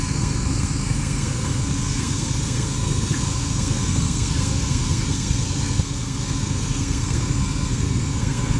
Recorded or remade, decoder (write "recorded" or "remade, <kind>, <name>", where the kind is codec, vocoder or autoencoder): remade, codec, SNAC